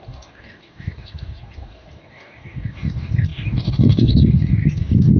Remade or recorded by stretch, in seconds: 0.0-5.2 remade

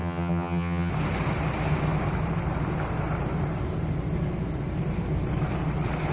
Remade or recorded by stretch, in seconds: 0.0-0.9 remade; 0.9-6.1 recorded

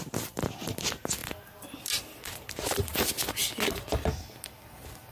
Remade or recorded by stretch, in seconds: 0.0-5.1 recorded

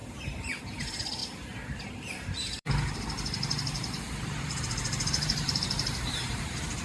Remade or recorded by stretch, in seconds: 0.0-1.2 remade; 1.2-1.8 recorded; 1.8-6.8 remade

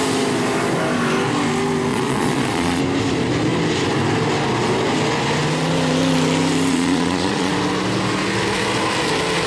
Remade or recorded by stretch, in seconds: 0.0-1.9 recorded; 1.9-2.8 remade; 2.8-6.7 recorded; 6.7-7.5 remade; 7.5-9.5 recorded

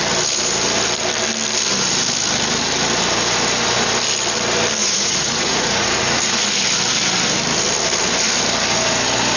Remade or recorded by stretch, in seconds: 0.0-4.8 recorded; 4.8-6.2 remade; 6.2-9.4 recorded